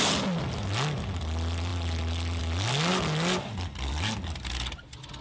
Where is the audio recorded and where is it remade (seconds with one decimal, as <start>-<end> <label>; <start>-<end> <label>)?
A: 0.0-5.2 recorded